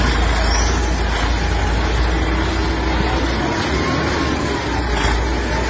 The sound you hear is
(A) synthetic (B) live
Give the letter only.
B